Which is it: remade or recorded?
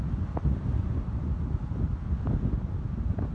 recorded